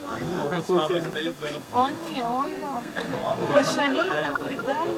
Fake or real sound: fake